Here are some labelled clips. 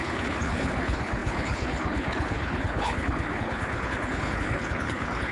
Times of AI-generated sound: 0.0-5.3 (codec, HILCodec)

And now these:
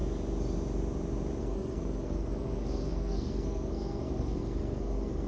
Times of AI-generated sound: 1.4-5.3 (codec, SNAC)

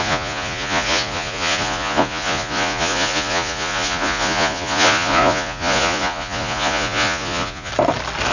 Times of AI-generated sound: 0.0-7.7 (vocoder, Vocos)

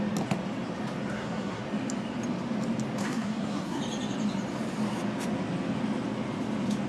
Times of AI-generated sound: 1.1-1.6 (codec, SNAC); 3.0-3.8